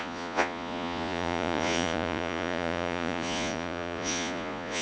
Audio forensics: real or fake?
fake